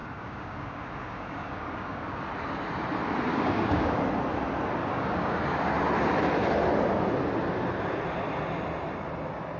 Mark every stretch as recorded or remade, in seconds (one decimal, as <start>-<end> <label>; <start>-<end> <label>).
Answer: 0.0-2.2 remade; 2.2-3.3 recorded; 3.3-4.0 remade; 4.0-4.8 recorded; 4.8-5.7 remade; 5.7-9.6 recorded